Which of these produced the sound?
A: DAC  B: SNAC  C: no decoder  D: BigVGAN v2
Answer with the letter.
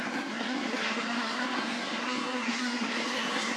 B